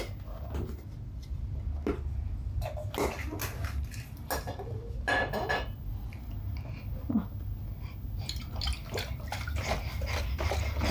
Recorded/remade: recorded